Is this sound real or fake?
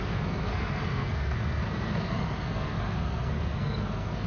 fake